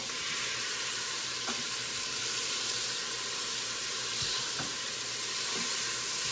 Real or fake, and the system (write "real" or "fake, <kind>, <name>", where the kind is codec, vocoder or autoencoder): fake, vocoder, BigVGAN v2